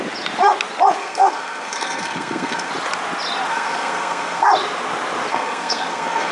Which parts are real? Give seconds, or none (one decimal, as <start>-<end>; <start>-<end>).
0.0-1.0; 2.7-3.5; 4.5-5.3